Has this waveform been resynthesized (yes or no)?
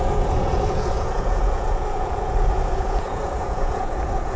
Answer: yes